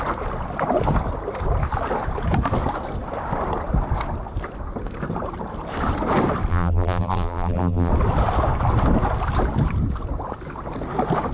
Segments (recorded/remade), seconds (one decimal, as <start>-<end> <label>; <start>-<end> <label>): 0.0-6.5 recorded; 6.5-7.9 remade; 7.9-11.3 recorded